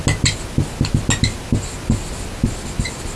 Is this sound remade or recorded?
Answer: recorded